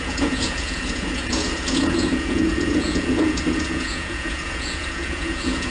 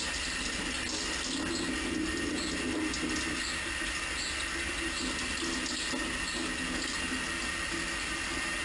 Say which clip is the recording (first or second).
second